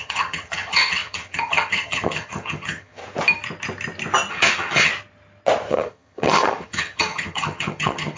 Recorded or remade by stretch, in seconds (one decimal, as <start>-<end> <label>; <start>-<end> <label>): 0.0-3.0 remade; 3.0-4.3 recorded; 4.3-4.9 remade; 4.9-5.7 recorded; 5.7-8.2 remade